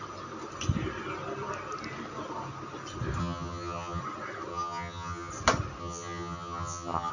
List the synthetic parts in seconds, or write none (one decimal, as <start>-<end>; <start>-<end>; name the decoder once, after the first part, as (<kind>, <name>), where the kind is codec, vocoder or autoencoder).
3.2-4.0 (vocoder, HiFi-GAN); 4.5-5.3; 5.8-7.1